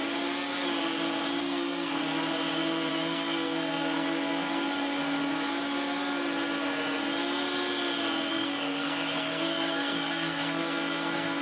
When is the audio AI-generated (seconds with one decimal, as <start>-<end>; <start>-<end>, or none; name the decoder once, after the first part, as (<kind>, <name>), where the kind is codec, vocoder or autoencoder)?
1.4-2.0 (codec, SNAC); 2.9-5.0; 8.3-11.4